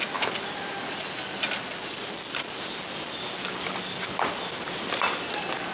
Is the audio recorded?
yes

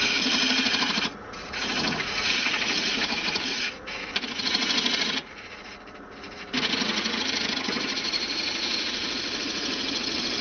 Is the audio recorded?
no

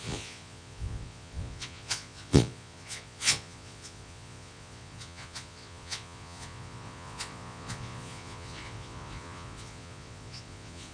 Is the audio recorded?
no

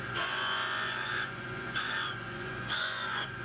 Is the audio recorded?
no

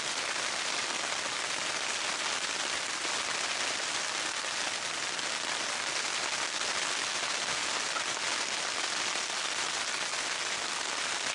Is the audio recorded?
yes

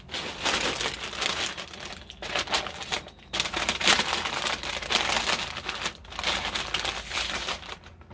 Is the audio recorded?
yes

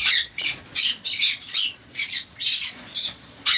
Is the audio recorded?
no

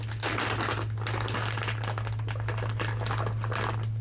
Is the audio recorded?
yes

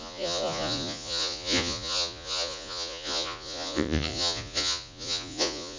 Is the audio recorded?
no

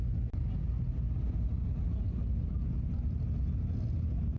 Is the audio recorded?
yes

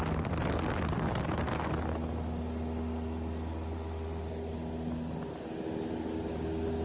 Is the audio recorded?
yes